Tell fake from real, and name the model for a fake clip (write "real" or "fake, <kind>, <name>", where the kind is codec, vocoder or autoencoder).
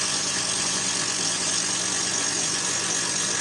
fake, vocoder, Vocos